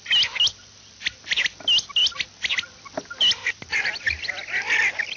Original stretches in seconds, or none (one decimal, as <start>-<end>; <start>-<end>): 0.0-3.4; 3.9-5.2